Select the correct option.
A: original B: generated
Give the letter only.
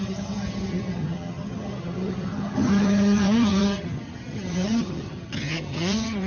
B